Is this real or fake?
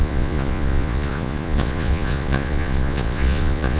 fake